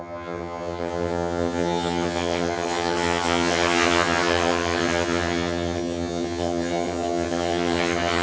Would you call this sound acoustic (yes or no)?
no